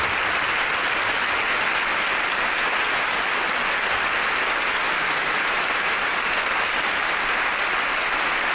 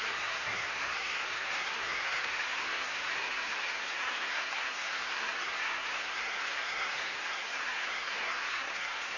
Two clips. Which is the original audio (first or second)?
first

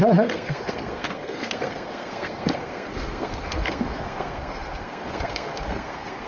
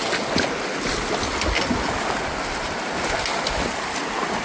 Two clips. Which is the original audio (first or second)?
second